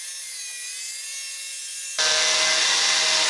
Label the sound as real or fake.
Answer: real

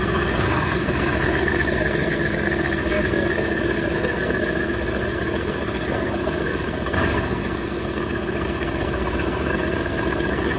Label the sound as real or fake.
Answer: fake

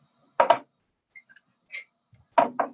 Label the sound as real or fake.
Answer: real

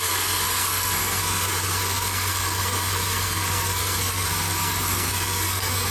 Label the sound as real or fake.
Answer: fake